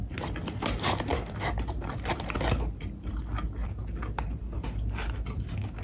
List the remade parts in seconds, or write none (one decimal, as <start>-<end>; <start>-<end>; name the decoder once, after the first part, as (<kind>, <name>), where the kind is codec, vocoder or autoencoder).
none